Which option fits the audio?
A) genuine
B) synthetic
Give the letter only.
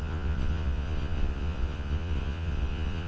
B